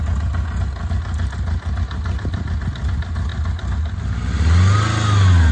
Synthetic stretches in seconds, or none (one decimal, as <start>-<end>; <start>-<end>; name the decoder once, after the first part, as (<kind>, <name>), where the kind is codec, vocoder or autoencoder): none